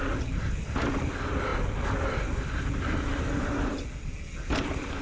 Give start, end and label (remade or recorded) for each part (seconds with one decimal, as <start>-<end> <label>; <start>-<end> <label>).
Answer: 0.0-5.0 recorded

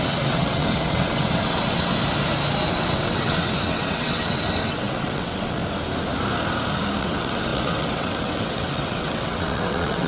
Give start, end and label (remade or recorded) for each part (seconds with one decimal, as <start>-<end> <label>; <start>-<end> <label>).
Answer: 0.0-1.9 remade; 1.9-2.7 recorded; 2.7-5.6 remade; 5.6-7.0 recorded; 7.0-10.1 remade